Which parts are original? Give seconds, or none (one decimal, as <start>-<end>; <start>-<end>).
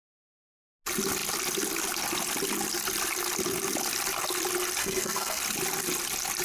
0.0-4.8; 5.4-6.4